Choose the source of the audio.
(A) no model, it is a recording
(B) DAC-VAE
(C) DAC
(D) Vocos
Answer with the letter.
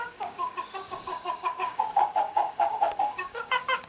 C